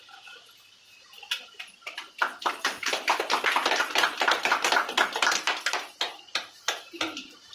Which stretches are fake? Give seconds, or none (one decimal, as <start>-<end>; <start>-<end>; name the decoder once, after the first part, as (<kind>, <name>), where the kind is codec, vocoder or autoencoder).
none